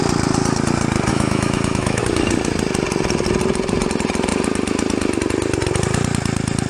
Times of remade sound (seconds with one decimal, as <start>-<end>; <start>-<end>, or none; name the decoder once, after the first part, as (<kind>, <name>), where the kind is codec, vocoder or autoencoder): 1.1-2.0 (autoencoder, DAC-VAE)